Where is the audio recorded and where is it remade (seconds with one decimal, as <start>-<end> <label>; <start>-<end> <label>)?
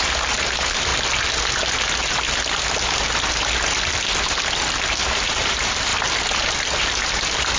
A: 0.0-0.9 remade; 0.9-5.1 recorded; 5.1-5.9 remade; 5.9-6.8 recorded; 6.8-7.6 remade